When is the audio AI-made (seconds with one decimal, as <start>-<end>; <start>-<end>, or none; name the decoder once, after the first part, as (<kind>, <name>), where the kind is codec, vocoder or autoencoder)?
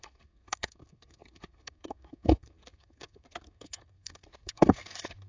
0.0-5.3 (codec, SNAC)